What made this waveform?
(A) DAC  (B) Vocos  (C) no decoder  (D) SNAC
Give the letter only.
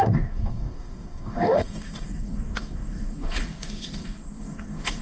A